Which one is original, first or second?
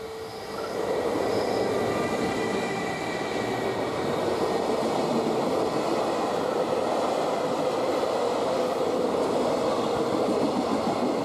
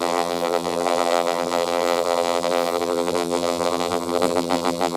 first